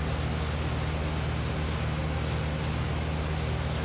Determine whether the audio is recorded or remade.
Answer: recorded